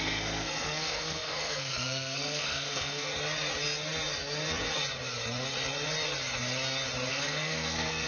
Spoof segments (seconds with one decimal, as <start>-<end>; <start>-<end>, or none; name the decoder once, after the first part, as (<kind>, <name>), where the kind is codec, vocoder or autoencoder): 0.0-3.1 (codec, SNAC); 7.1-8.1